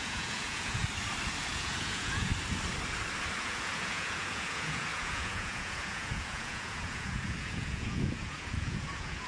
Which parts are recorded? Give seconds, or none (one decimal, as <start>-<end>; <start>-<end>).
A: 0.8-1.5; 2.3-3.4